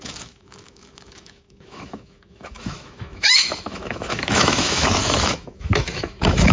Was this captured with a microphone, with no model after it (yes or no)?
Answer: no